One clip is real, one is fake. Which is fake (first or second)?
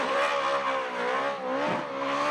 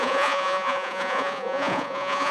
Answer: second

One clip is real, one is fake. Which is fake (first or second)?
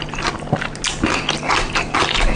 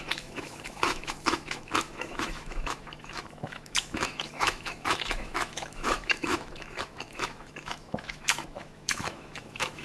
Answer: second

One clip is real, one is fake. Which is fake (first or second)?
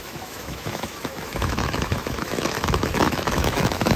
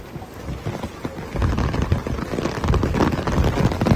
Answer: first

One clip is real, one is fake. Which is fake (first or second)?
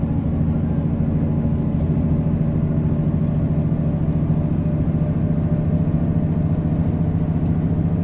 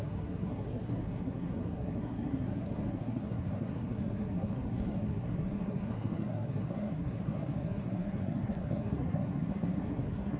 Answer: second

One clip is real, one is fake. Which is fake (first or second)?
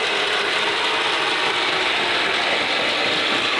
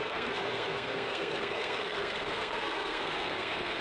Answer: second